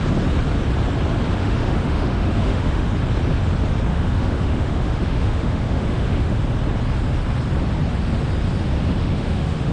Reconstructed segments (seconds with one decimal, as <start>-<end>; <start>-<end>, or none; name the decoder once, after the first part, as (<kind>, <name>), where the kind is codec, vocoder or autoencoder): 1.4-2.9 (autoencoder, DAC-VAE); 3.9-6.4; 9.0-9.7